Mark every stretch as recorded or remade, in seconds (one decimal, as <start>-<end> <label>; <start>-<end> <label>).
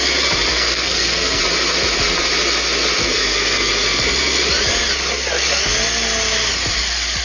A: 0.0-0.5 recorded; 0.5-1.4 remade; 1.4-3.0 recorded; 3.0-3.7 remade; 3.7-7.2 recorded